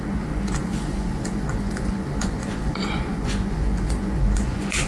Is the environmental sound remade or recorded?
remade